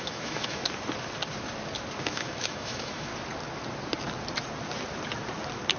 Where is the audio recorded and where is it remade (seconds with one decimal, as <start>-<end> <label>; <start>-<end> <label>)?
0.0-0.6 remade; 0.6-2.0 recorded; 2.0-3.1 remade; 3.1-5.8 recorded